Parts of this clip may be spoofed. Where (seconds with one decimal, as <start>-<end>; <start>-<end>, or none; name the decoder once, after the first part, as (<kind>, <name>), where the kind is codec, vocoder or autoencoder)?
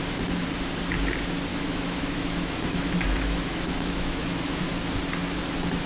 1.5-4.7 (autoencoder, DAC-VAE)